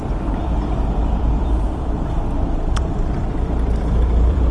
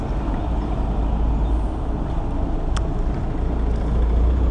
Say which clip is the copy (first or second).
first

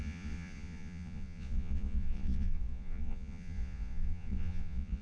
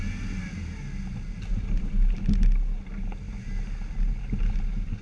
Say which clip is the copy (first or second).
first